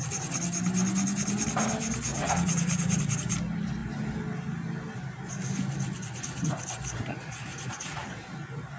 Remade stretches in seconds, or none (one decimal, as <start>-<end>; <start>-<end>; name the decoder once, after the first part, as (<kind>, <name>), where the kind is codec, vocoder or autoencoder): 2.1-3.0 (vocoder, Vocos); 7.5-8.1